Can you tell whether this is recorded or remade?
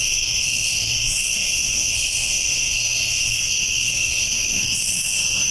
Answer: remade